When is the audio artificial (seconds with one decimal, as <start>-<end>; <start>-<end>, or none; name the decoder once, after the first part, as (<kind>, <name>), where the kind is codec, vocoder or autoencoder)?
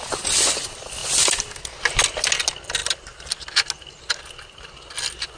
none